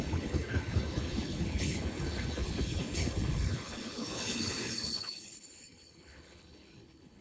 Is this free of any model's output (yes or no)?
no